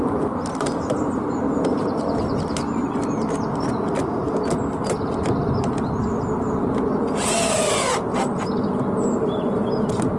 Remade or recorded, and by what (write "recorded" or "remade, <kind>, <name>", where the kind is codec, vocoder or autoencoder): recorded